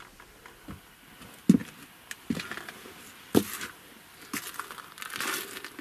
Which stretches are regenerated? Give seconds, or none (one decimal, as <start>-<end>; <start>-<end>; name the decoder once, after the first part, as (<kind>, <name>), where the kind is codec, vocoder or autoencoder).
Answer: none